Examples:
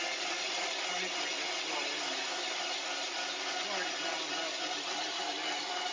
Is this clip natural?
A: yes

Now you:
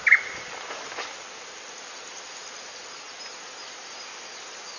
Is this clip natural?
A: yes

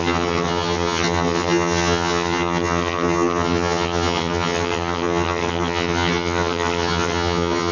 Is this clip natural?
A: no